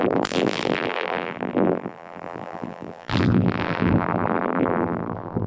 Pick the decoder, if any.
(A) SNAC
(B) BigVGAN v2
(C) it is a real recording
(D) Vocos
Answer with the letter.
B